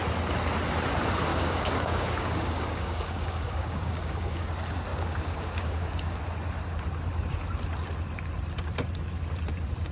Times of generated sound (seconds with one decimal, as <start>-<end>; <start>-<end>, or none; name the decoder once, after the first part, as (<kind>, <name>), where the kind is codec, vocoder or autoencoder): 1.3-4.5 (codec, DAC); 4.9-6.2

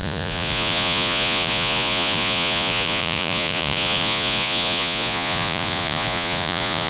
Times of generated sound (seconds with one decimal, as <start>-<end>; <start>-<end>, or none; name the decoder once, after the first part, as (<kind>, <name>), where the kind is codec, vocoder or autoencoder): 0.0-6.9 (vocoder, Vocos)

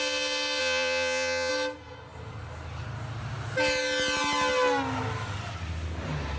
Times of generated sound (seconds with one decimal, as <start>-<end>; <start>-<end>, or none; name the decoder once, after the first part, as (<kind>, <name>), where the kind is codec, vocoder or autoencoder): 0.6-1.5 (vocoder, Vocos)

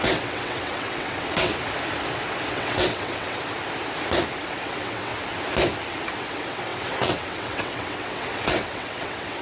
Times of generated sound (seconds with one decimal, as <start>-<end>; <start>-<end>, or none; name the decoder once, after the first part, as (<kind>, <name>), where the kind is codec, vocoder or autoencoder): 0.0-1.5 (vocoder, WaveNeXt); 2.5-3.4; 4.4-5.1; 6.2-9.4

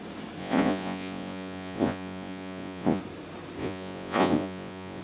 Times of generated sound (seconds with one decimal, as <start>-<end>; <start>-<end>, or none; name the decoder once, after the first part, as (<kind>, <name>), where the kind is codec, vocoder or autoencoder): 0.4-3.0 (vocoder, Vocos); 3.6-5.0